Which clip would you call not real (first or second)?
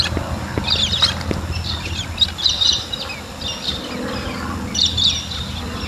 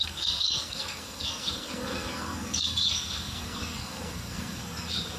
second